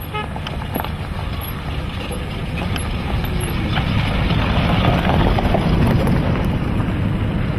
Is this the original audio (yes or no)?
yes